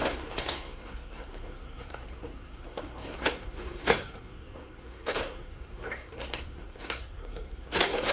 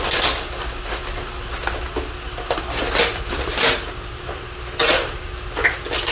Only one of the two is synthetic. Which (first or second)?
first